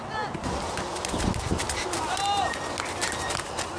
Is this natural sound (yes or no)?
yes